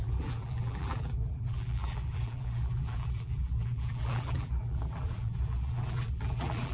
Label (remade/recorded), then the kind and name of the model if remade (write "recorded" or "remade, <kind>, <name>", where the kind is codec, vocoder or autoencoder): remade, vocoder, BigVGAN v2